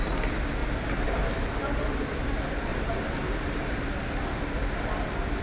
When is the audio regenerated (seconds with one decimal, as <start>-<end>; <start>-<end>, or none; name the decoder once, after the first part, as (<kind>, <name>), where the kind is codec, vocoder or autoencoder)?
0.6-1.5 (vocoder, BigVGAN v2); 2.7-3.8